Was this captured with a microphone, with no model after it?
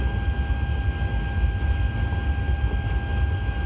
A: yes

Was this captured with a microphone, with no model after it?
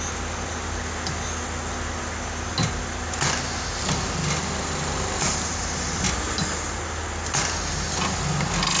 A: yes